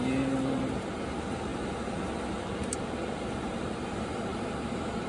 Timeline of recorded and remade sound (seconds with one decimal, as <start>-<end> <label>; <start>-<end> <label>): 0.0-1.5 remade; 1.5-2.5 recorded; 2.5-5.1 remade